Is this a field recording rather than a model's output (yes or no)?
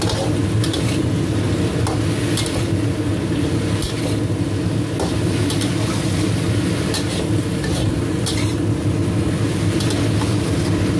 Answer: yes